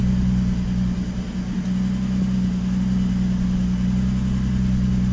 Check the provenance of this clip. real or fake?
real